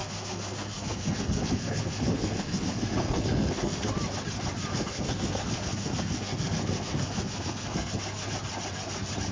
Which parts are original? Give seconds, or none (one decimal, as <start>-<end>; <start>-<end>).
3.9-4.7; 7.9-9.3